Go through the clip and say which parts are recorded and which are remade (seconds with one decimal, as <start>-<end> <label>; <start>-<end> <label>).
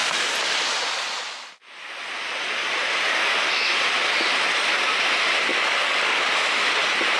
0.0-5.5 recorded; 5.5-6.2 remade; 6.2-7.2 recorded